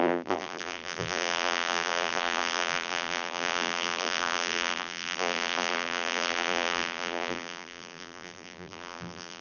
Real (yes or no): no